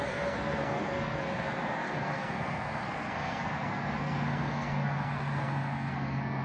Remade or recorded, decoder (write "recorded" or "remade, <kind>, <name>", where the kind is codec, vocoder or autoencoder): remade, codec, SNAC